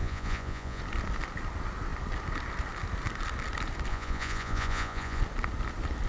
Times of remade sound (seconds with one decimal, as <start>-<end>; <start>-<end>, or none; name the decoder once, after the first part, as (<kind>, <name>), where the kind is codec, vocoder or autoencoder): 0.0-0.8 (vocoder, Vocos); 3.9-5.2